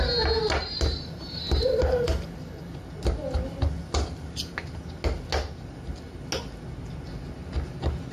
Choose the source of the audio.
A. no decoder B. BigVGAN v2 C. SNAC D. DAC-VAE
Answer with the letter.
A